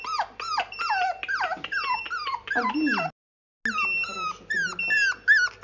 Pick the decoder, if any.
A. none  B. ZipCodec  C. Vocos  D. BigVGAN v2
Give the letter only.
A